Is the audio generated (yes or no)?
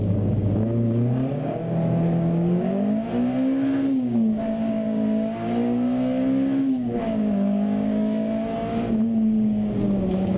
yes